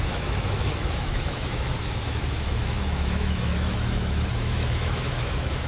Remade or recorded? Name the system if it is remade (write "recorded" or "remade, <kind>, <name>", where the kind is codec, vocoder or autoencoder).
remade, autoencoder, DAC-VAE